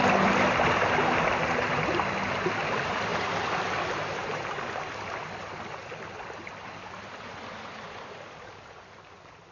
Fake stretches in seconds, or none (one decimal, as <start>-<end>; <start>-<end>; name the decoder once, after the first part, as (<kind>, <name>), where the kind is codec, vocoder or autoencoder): 3.1-8.4 (vocoder, BigVGAN v2)